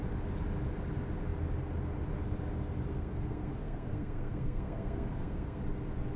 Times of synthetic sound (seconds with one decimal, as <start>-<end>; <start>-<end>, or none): 2.9-5.6